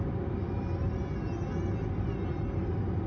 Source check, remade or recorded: recorded